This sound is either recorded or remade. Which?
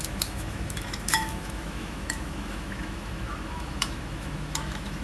remade